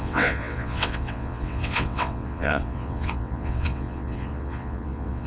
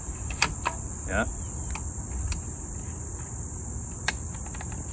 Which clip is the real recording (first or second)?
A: second